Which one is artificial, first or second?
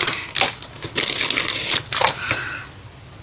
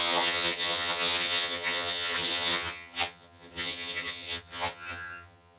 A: second